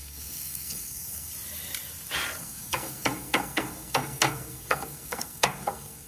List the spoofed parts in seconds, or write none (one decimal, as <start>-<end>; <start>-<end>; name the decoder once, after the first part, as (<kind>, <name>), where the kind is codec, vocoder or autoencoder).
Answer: 0.0-1.3 (codec, SNAC); 2.4-6.1